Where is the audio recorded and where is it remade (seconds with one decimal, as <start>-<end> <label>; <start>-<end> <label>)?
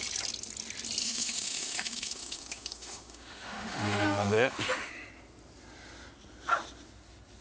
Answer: 0.0-1.0 recorded; 1.0-4.9 remade; 4.9-7.4 recorded